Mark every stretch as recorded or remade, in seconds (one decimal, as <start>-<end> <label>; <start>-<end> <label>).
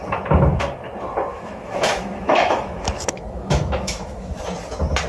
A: 0.0-1.3 recorded; 1.3-4.4 remade; 4.4-5.1 recorded